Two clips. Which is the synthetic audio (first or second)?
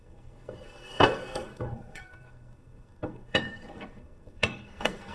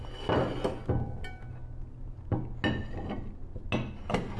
first